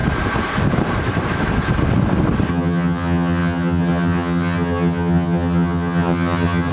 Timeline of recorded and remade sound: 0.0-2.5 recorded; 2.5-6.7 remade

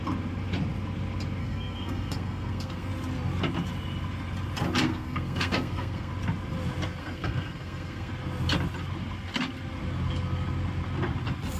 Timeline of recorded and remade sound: 0.0-1.4 recorded; 1.4-2.9 remade; 2.9-4.8 recorded; 4.8-6.1 remade; 6.1-7.0 recorded; 7.0-8.1 remade; 8.1-11.6 recorded

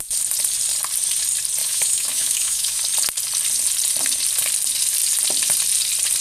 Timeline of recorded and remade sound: 0.0-1.6 recorded; 1.6-2.8 remade; 2.8-6.2 recorded

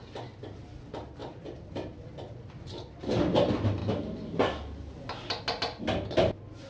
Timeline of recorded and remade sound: 0.0-1.2 recorded; 1.2-2.9 remade; 2.9-6.7 recorded

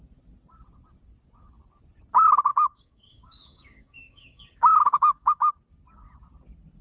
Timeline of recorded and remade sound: 0.0-2.5 recorded; 2.5-5.5 remade; 5.5-6.8 recorded

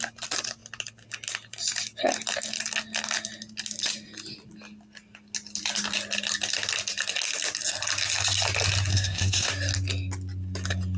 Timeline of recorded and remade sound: 0.0-8.9 recorded; 8.9-9.5 remade; 9.5-11.0 recorded

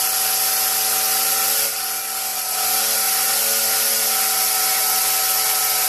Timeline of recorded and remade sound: 0.0-5.9 recorded